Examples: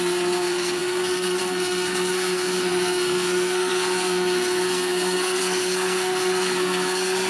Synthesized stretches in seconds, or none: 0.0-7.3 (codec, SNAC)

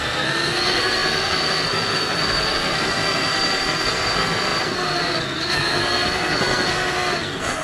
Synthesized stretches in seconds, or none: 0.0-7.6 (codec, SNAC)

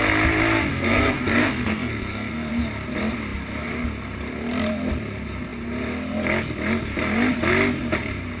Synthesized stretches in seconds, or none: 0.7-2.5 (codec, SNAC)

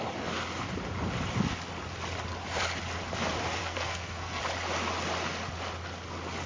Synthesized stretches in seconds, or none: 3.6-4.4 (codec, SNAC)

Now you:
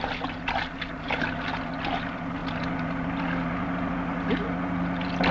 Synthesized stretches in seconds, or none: none

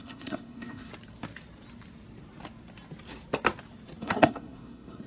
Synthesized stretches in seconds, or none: 0.0-0.9 (codec, SNAC); 4.0-5.1